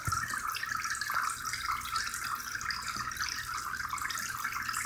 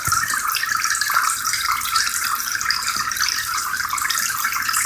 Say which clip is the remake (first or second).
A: second